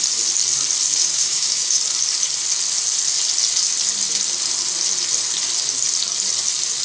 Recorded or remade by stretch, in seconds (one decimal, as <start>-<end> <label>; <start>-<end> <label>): 0.0-1.0 recorded; 1.0-1.8 remade; 1.8-6.8 recorded

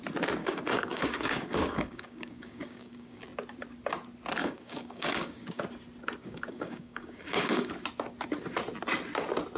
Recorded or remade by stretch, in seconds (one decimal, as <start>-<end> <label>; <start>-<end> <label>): 0.0-0.4 recorded; 0.4-3.2 remade; 3.2-4.4 recorded; 4.4-5.6 remade; 5.6-6.2 recorded; 6.2-7.7 remade; 7.7-9.6 recorded

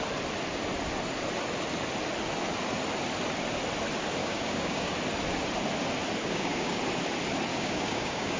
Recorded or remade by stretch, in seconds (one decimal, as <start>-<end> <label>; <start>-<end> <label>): 0.0-4.2 recorded; 4.2-4.9 remade; 4.9-6.2 recorded; 6.2-6.8 remade; 6.8-7.5 recorded; 7.5-8.4 remade

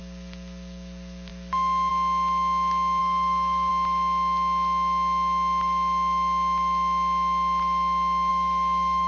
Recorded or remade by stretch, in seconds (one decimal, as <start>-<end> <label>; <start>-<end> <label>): 0.0-3.0 recorded; 3.0-3.7 remade; 3.7-8.3 recorded; 8.3-9.1 remade

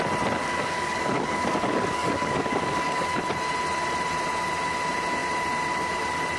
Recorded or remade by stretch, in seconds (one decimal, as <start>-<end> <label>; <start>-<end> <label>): 0.0-0.4 recorded; 0.4-3.2 remade; 3.2-6.4 recorded

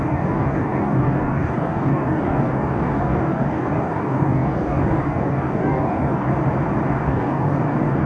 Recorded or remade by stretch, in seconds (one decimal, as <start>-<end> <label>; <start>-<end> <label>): 0.0-6.3 remade; 6.3-6.9 recorded; 6.9-8.1 remade

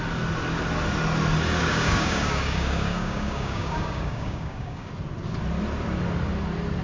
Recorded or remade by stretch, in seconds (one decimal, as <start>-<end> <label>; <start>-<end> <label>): 0.0-1.6 recorded; 1.6-4.9 remade; 4.9-6.8 recorded

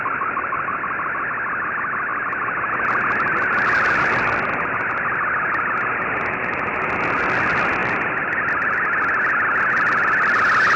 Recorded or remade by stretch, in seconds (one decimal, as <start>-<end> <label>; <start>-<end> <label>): 0.0-10.8 recorded